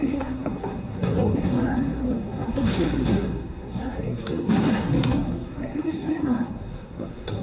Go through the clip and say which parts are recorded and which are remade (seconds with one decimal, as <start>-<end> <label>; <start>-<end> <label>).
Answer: 0.0-7.4 remade